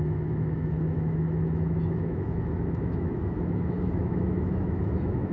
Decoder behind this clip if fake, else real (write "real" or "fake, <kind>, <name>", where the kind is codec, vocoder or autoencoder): fake, autoencoder, DAC-VAE